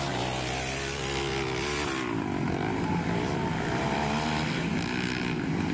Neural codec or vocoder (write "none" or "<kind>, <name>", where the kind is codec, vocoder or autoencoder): none